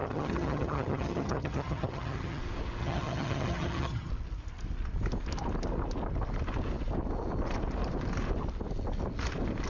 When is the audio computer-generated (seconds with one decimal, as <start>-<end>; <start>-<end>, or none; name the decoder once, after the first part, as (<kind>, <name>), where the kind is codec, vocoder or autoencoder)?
0.0-2.4 (vocoder, HiFi-GAN); 2.8-4.1